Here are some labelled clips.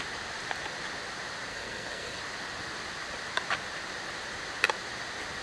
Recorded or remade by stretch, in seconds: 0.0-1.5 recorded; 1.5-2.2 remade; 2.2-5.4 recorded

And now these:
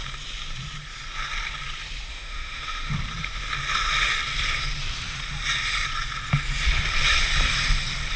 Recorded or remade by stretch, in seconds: 0.0-2.1 recorded; 2.1-2.9 remade; 2.9-8.2 recorded